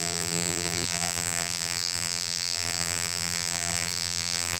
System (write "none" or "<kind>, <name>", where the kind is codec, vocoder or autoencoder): vocoder, BigVGAN v2